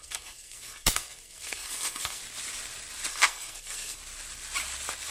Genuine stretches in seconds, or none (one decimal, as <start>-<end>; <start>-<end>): 2.2-3.1; 4.0-5.1